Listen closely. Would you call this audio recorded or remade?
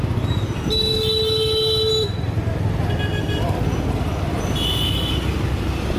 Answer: recorded